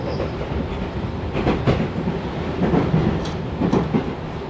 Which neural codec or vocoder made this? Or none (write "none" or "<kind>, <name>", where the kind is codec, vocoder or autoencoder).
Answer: none